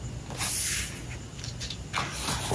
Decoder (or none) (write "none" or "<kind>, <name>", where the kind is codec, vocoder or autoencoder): none